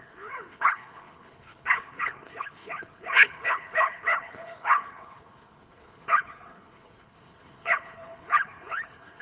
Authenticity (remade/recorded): remade